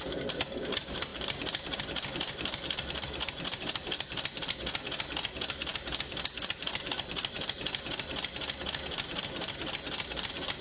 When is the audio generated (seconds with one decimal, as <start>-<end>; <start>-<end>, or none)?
none